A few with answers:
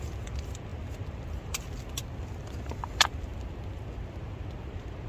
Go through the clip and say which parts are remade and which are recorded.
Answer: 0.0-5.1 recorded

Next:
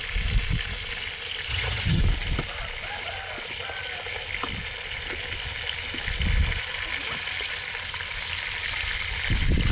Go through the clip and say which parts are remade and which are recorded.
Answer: 0.0-1.5 recorded; 1.5-2.0 remade; 2.0-9.7 recorded

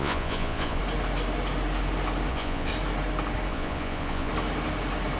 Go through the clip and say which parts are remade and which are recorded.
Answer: 0.0-0.8 remade; 0.8-2.3 recorded; 2.3-2.7 remade; 2.7-3.5 recorded; 3.5-4.3 remade; 4.3-5.2 recorded

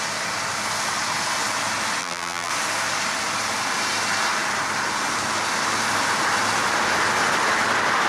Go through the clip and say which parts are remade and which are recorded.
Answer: 0.0-2.0 recorded; 2.0-2.5 remade; 2.5-8.1 recorded